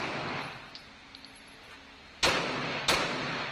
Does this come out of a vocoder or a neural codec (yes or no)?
no